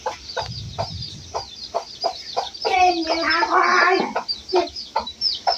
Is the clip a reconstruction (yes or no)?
yes